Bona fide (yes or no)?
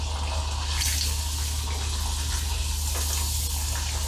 yes